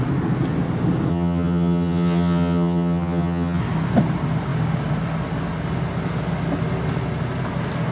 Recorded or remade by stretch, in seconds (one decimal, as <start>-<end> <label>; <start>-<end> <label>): 0.0-1.1 recorded; 1.1-3.6 remade; 3.6-7.9 recorded

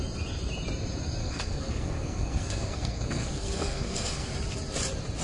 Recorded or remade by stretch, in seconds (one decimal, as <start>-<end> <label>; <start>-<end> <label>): 0.0-1.2 recorded; 1.2-4.3 remade; 4.3-5.2 recorded

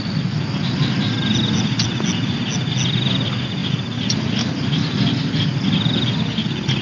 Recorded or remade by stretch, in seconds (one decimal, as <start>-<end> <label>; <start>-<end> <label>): 0.0-3.6 recorded; 3.6-6.8 remade

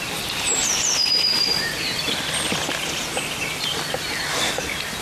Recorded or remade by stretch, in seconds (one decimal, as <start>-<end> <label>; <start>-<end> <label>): 0.0-0.6 recorded; 0.6-3.6 remade; 3.6-5.0 recorded

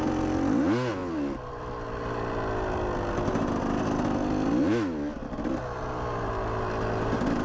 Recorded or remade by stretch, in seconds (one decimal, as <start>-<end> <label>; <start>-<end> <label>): 0.0-7.4 recorded

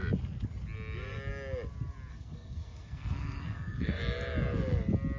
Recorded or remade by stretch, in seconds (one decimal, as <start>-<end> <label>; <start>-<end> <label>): 0.0-2.1 recorded; 2.1-4.0 remade; 4.0-5.2 recorded